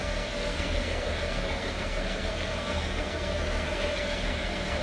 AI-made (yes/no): yes